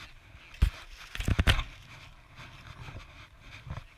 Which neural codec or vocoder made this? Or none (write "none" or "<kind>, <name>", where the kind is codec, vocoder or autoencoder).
none